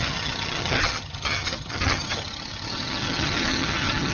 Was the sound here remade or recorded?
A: remade